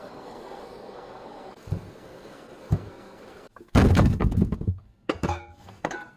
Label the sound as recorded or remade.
remade